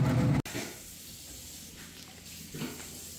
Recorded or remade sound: recorded